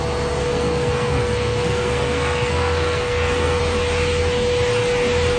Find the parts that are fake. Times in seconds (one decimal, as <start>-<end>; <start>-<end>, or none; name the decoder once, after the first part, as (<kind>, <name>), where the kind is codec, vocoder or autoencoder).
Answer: 0.4-3.6 (codec, SNAC)